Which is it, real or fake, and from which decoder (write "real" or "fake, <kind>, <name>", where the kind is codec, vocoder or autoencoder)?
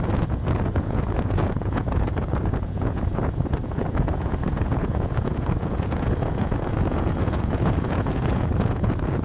fake, vocoder, Vocos